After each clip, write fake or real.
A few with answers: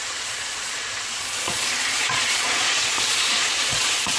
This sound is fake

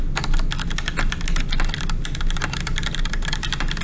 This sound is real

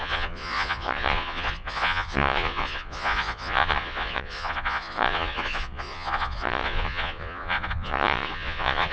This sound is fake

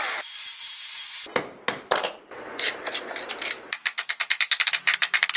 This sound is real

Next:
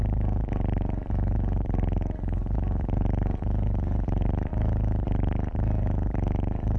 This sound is real